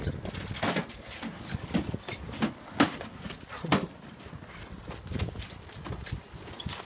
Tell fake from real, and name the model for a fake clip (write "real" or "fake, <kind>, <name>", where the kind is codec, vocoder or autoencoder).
real